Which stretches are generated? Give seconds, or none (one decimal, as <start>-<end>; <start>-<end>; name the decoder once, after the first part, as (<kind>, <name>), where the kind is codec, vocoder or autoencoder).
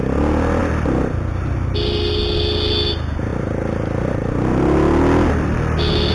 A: none